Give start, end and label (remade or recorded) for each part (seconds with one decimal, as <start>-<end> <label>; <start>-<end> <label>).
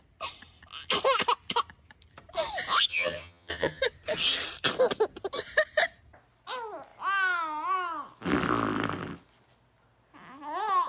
0.0-2.9 recorded; 2.9-3.8 remade; 3.8-10.9 recorded